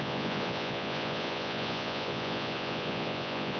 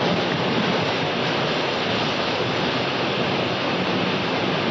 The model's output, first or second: first